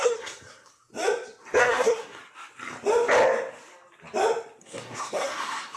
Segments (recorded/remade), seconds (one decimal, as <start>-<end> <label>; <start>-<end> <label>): 0.0-0.9 remade; 0.9-1.6 recorded; 1.6-2.2 remade; 2.2-4.6 recorded; 4.6-5.8 remade